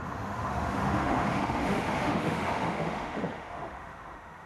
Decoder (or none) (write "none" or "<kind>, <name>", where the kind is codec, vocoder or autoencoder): autoencoder, DAC-VAE